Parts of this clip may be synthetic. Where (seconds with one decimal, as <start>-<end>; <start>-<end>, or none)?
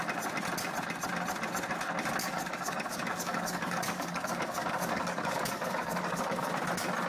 2.2-6.5